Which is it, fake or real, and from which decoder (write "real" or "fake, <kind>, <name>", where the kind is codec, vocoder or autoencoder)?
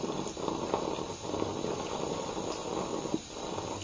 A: real